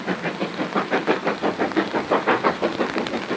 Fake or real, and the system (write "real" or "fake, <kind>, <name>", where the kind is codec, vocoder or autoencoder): real